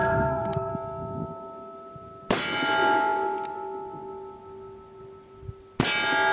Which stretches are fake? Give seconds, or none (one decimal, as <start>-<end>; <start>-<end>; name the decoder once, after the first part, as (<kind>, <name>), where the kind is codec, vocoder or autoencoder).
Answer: 0.0-0.7 (codec, SNAC)